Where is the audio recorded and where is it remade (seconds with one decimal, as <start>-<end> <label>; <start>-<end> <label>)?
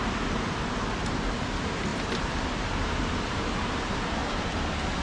0.0-4.2 remade; 4.2-5.0 recorded